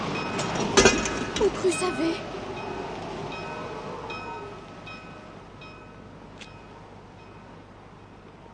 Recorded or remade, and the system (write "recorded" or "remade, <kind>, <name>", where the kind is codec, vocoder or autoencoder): recorded